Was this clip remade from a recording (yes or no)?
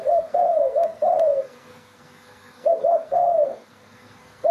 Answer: yes